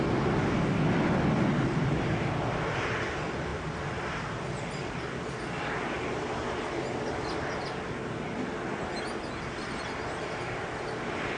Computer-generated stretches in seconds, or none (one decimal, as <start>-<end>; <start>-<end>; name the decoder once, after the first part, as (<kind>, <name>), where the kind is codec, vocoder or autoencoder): none